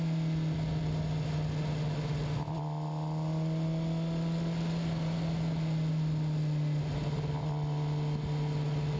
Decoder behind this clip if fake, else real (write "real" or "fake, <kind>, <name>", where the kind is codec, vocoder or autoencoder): real